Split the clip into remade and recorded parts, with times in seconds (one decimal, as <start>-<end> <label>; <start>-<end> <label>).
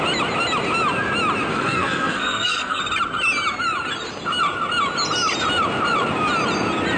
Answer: 0.0-1.5 recorded; 1.5-2.8 remade; 2.8-7.0 recorded